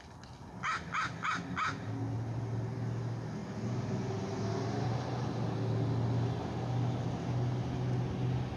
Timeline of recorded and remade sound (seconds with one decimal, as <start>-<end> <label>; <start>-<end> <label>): 0.0-8.6 recorded